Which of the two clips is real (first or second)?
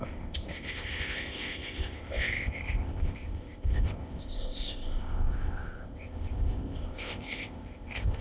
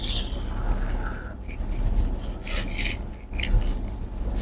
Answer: second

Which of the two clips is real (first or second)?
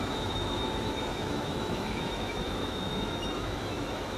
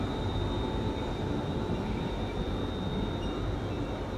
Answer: second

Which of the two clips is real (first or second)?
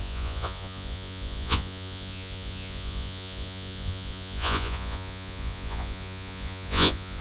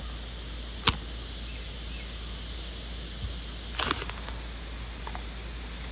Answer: second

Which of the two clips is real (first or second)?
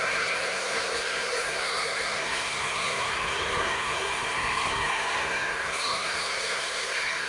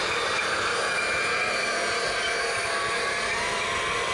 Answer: second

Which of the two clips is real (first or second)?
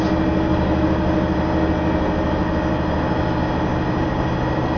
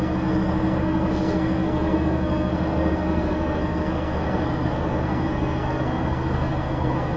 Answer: first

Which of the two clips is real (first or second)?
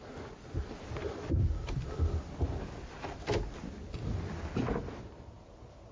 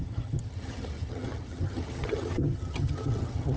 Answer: first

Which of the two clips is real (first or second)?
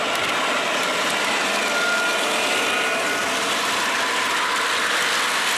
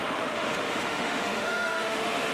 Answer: first